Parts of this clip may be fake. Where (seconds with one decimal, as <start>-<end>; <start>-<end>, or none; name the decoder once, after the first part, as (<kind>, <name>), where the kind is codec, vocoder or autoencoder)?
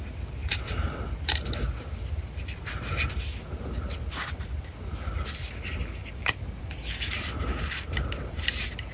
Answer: none